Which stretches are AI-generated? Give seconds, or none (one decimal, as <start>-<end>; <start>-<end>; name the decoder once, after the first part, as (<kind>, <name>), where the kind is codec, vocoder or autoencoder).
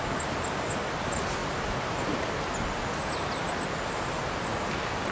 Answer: none